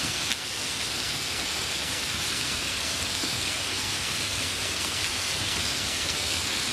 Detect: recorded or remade remade